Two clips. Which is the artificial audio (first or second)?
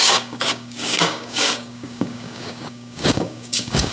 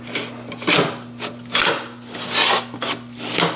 first